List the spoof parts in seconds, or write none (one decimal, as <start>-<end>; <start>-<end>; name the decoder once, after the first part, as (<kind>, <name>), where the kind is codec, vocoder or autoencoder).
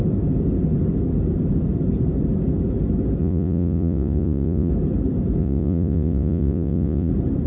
3.2-4.7 (vocoder, Vocos); 5.4-7.1